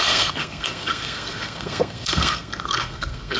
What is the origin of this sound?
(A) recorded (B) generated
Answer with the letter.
B